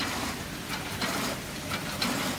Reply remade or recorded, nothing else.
recorded